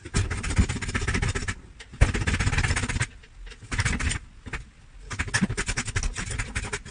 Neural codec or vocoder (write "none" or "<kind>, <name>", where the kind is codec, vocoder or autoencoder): none